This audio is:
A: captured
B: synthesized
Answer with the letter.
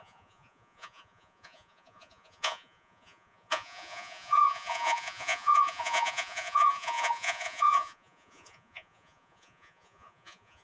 B